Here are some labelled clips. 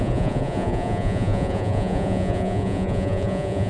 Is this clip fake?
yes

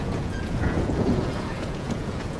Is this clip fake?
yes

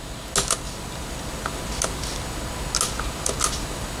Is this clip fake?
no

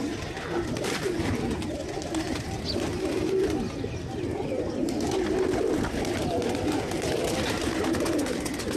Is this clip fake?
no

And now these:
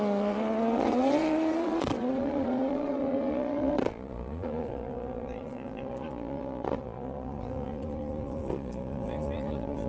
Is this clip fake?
yes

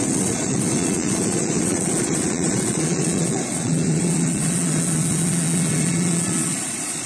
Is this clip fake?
yes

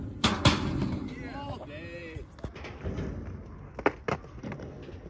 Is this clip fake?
no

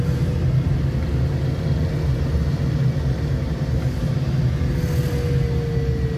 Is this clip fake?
no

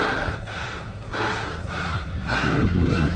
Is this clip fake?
yes